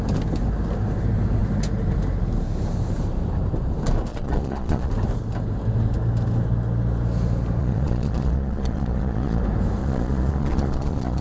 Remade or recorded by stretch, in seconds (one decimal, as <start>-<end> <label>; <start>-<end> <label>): 0.0-4.1 recorded; 4.1-4.9 remade; 4.9-7.6 recorded; 7.6-9.4 remade; 9.4-9.8 recorded; 9.8-11.2 remade